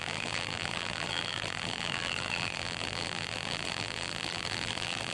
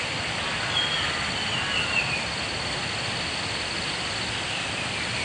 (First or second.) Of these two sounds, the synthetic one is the first